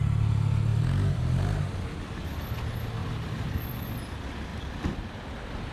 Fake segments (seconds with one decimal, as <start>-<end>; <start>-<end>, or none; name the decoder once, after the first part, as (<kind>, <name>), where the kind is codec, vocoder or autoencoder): 3.0-4.0 (vocoder, BigVGAN v2); 4.5-5.7